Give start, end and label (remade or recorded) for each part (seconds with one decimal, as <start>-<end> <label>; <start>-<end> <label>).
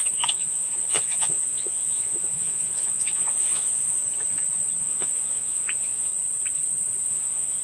0.0-4.0 remade; 4.0-4.8 recorded; 4.8-6.1 remade; 6.1-7.1 recorded; 7.1-7.6 remade